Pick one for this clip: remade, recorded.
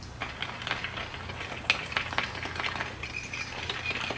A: recorded